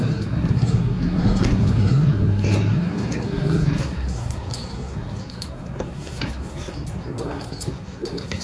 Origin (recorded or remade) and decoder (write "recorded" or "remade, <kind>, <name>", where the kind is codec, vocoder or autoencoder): remade, codec, SNAC